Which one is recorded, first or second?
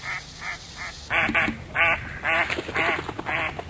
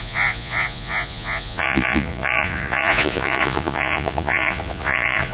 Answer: first